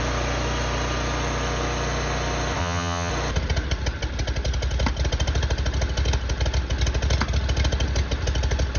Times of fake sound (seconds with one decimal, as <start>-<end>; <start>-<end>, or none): 2.6-3.1